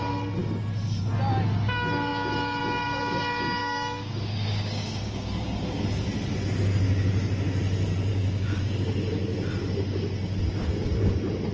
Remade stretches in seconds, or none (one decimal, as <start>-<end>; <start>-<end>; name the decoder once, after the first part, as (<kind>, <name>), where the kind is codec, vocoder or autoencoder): 3.6-5.8 (codec, DAC); 8.1-8.6